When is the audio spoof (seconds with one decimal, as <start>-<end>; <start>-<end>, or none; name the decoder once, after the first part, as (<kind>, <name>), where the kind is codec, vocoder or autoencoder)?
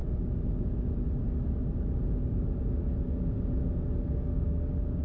4.0-5.0 (codec, DAC)